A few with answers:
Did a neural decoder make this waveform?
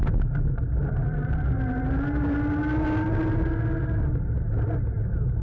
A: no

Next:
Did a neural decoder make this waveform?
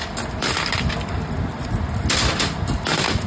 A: no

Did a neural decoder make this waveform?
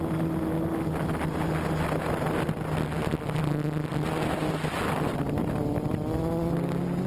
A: no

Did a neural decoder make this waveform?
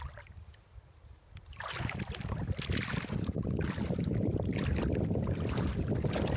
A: no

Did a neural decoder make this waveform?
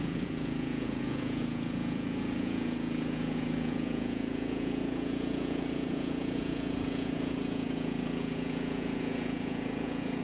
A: yes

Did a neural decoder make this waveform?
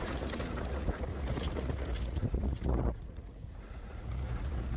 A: yes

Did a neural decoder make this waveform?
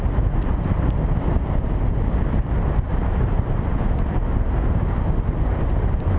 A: no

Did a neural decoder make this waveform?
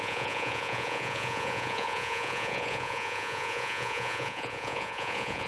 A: yes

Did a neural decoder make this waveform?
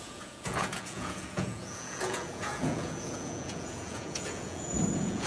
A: yes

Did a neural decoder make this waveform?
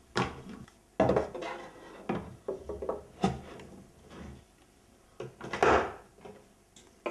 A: no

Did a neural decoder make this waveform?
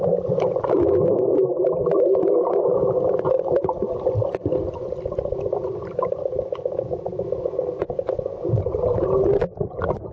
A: no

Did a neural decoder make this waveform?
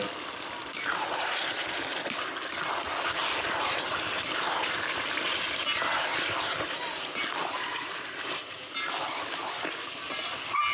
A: no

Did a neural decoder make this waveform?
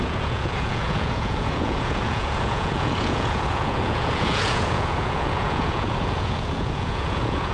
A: yes